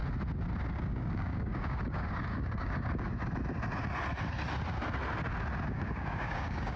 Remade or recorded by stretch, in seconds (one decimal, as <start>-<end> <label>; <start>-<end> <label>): 0.0-0.7 recorded; 0.7-3.1 remade; 3.1-5.7 recorded; 5.7-6.8 remade